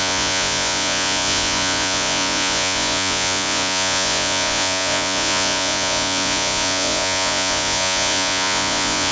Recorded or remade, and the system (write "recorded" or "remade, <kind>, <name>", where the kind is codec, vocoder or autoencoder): remade, vocoder, Vocos